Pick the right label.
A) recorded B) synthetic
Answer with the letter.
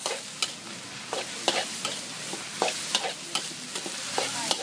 A